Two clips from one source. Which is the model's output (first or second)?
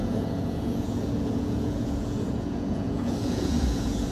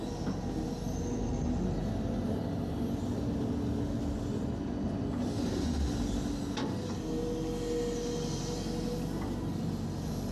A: first